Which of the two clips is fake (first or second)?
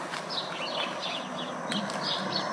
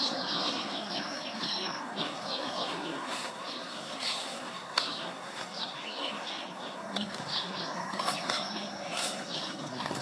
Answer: second